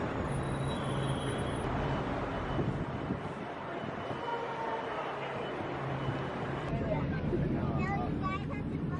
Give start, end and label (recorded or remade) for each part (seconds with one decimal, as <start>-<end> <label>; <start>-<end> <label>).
0.0-9.0 recorded